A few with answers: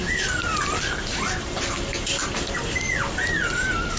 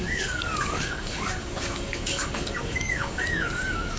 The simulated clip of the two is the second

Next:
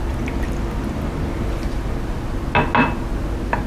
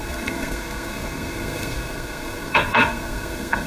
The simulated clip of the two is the second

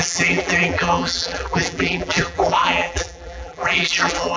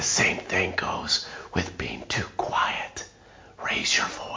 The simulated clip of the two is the first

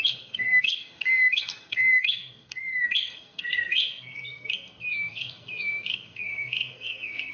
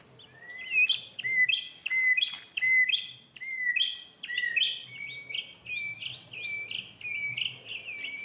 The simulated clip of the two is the first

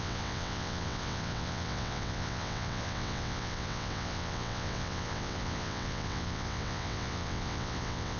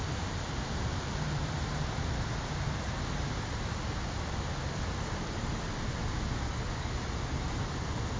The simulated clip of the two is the first